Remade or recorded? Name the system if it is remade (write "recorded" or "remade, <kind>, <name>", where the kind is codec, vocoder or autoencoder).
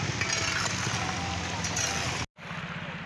recorded